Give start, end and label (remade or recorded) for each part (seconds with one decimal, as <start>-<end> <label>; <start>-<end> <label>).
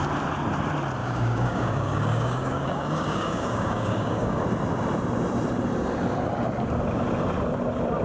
0.0-1.0 recorded; 1.0-4.4 remade; 4.4-8.0 recorded